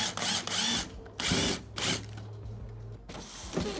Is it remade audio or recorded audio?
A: recorded